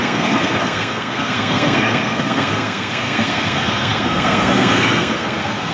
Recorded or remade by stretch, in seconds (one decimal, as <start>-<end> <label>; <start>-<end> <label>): 0.0-5.7 remade